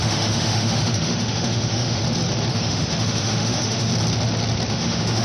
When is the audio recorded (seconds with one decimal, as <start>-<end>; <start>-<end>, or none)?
2.0-2.5; 3.9-4.7